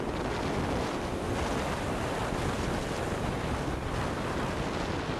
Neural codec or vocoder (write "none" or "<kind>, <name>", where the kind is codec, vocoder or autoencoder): none